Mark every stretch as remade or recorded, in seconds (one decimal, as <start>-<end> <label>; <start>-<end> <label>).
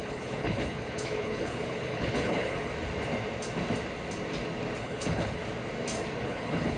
0.0-2.7 remade; 2.7-4.8 recorded; 4.8-5.4 remade; 5.4-6.2 recorded; 6.2-6.8 remade